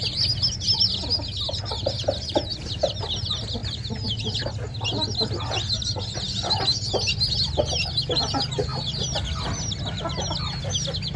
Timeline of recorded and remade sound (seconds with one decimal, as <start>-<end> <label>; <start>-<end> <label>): 0.0-11.2 recorded